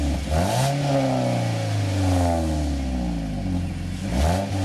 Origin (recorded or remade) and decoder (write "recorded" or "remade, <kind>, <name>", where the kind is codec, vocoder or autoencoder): recorded